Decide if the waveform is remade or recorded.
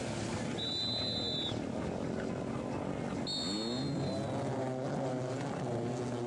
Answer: recorded